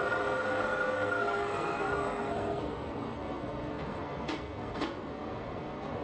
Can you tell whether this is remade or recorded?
remade